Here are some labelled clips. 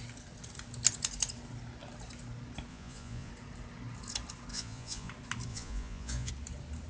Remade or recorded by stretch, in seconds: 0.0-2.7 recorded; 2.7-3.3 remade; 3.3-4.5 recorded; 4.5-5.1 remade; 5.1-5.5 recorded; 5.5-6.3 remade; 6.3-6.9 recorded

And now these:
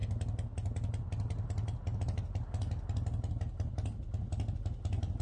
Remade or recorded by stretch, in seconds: 0.0-5.2 recorded

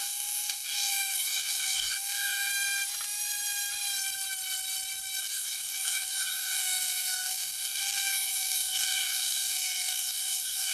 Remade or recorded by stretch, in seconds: 0.0-2.5 remade; 2.5-5.2 recorded; 5.2-10.7 remade

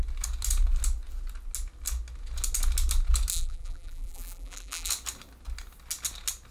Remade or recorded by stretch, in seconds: 0.0-3.3 recorded; 3.3-4.9 remade; 4.9-6.5 recorded

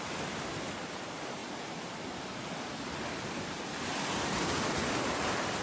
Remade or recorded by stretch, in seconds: 0.0-5.6 recorded

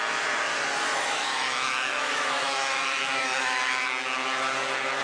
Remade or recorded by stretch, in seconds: 0.0-0.9 recorded; 0.9-3.9 remade; 3.9-5.0 recorded

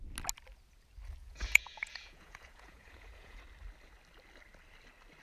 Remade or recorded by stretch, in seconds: 0.0-1.2 recorded; 1.2-3.4 remade; 3.4-5.2 recorded

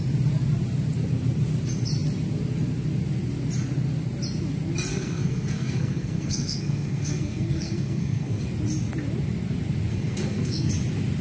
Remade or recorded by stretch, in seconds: 0.0-4.9 recorded; 4.9-8.4 remade; 8.4-9.9 recorded; 9.9-10.7 remade; 10.7-11.2 recorded